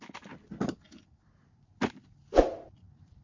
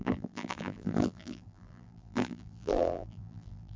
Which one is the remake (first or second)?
second